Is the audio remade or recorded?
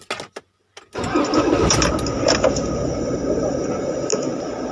recorded